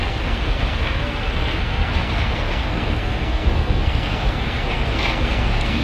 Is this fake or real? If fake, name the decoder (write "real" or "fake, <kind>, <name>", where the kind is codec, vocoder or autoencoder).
fake, codec, SNAC